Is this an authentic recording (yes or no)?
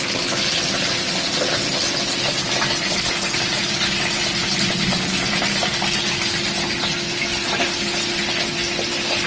yes